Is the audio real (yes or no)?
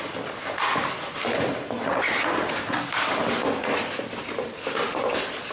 yes